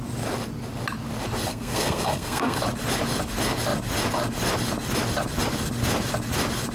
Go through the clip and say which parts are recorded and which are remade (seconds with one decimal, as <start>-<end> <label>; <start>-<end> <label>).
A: 0.0-1.5 recorded; 1.5-2.6 remade; 2.6-6.7 recorded